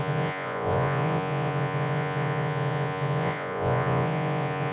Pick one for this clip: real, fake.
fake